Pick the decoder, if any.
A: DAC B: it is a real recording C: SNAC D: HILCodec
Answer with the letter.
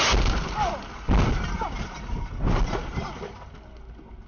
B